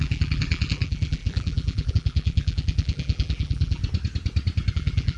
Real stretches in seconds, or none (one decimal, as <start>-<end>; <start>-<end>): 3.8-4.7